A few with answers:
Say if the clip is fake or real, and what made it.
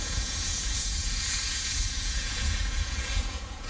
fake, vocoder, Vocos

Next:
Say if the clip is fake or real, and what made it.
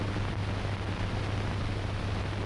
real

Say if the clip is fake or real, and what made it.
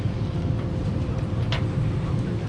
real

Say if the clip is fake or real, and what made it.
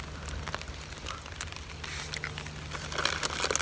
real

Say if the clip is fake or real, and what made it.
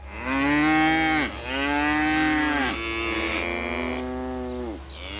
real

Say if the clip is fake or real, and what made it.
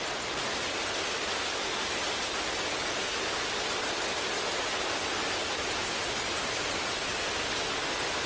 real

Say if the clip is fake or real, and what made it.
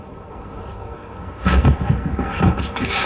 fake, codec, SNAC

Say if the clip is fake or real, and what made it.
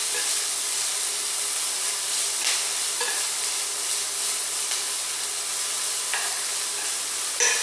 real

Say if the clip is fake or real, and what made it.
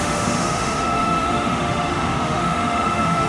fake, autoencoder, DAC-VAE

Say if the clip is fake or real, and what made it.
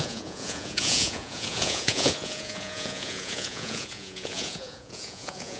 fake, vocoder, Vocos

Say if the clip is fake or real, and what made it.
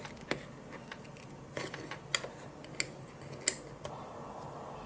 real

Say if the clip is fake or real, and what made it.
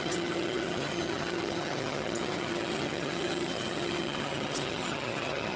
fake, vocoder, HiFi-GAN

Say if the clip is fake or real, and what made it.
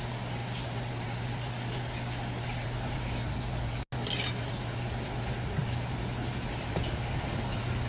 real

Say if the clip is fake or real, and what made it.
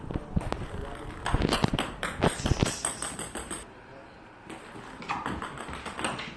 real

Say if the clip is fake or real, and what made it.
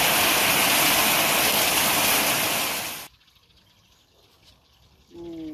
real